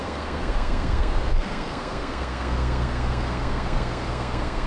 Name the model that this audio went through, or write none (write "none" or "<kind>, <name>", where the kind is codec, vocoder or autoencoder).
codec, SNAC